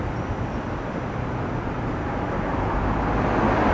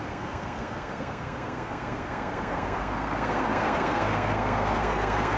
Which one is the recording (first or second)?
first